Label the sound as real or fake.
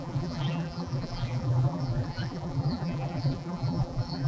fake